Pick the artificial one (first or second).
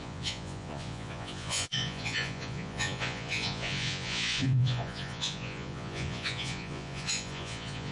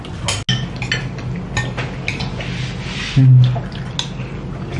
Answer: first